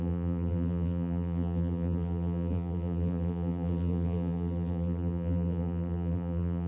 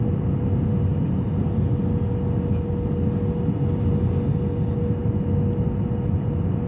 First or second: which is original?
second